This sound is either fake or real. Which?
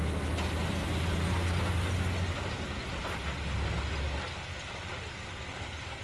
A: real